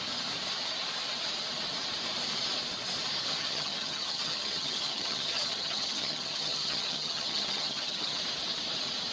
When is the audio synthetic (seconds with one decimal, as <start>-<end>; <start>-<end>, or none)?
3.4-8.2